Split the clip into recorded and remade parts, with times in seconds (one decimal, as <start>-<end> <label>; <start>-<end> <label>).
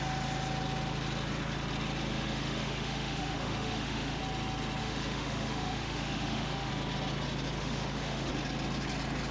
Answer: 0.0-2.1 recorded; 2.1-4.2 remade; 4.2-4.8 recorded; 4.8-6.7 remade; 6.7-7.6 recorded; 7.6-8.3 remade; 8.3-9.3 recorded